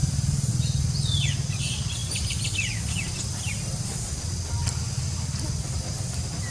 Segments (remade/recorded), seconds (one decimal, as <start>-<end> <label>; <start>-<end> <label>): 0.0-0.5 remade; 0.5-2.0 recorded; 2.0-4.3 remade; 4.3-6.5 recorded